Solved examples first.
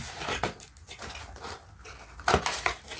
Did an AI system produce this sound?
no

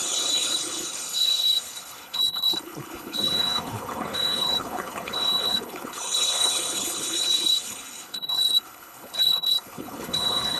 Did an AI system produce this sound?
yes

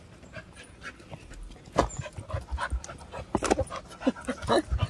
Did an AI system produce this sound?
no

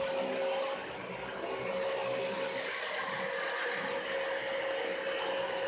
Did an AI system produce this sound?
no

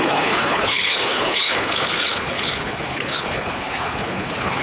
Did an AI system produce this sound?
yes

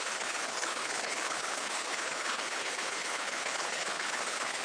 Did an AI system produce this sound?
yes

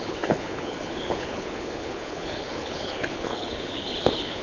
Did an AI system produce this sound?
yes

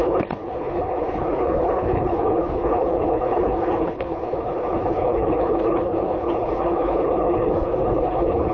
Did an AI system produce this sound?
yes